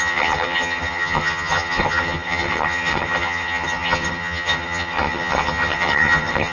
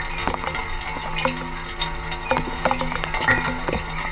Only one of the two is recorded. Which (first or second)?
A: second